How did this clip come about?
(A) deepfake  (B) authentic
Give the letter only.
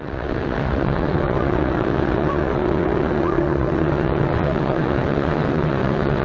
A